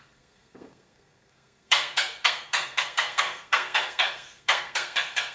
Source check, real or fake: fake